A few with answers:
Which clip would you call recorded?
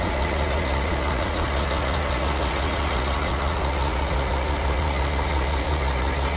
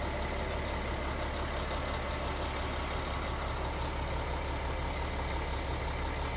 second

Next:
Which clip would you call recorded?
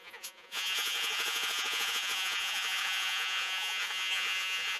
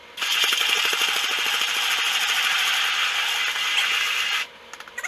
second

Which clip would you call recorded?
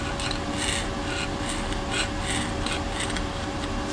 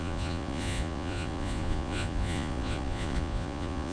first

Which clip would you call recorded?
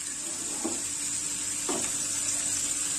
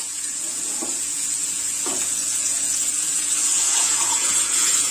first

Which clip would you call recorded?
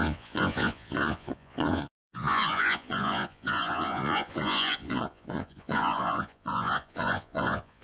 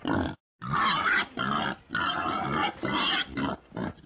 second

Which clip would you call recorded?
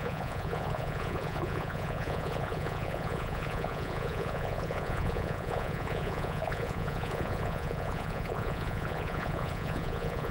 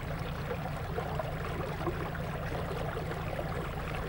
second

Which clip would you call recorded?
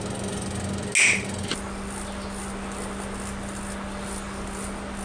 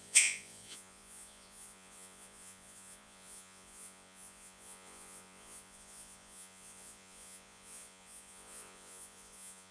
first